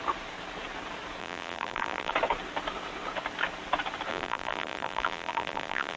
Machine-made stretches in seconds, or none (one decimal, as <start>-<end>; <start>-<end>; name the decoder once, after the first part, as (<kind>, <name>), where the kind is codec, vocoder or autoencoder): 1.2-2.1 (vocoder, BigVGAN v2); 4.1-6.0